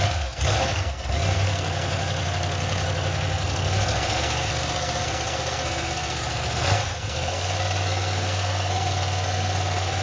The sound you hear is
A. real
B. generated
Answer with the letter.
B